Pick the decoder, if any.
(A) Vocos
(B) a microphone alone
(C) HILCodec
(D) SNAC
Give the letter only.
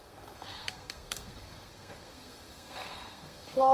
D